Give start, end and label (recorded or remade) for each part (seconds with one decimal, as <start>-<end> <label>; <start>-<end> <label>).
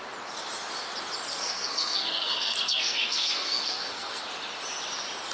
0.0-1.3 recorded; 1.3-4.2 remade; 4.2-5.3 recorded